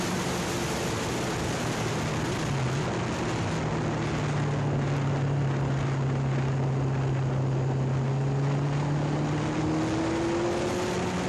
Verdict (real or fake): real